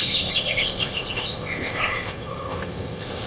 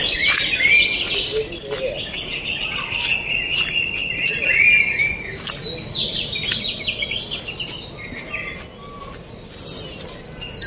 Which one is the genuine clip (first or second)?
second